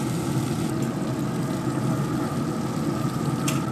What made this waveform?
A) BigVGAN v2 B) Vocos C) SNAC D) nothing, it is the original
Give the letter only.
D